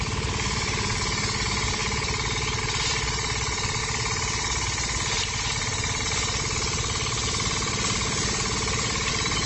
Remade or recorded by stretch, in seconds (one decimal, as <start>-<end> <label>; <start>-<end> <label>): 0.0-1.8 remade; 1.8-2.6 recorded; 2.6-3.8 remade; 3.8-9.1 recorded; 9.1-9.5 remade